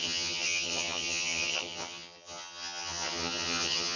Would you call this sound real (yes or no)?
no